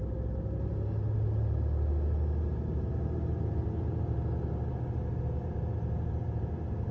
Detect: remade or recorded recorded